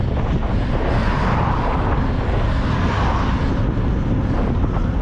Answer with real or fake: real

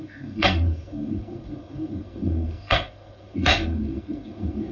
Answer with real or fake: fake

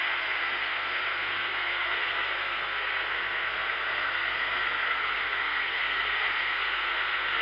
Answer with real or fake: fake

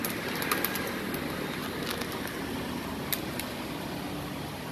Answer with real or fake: real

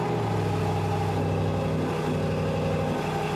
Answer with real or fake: real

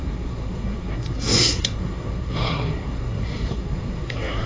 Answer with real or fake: fake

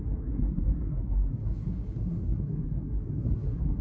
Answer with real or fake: fake